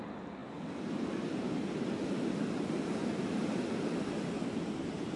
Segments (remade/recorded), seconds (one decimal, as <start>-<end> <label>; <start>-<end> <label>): 0.0-5.2 recorded